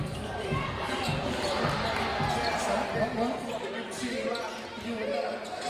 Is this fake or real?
real